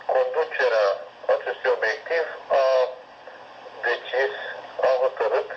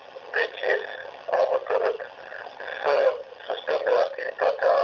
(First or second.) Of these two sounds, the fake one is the second